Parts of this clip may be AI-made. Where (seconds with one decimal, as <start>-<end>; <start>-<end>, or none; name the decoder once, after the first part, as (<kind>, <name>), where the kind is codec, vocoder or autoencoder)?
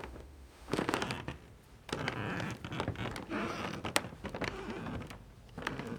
0.0-1.0 (autoencoder, DAC-VAE)